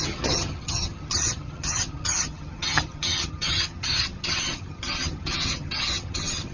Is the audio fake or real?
fake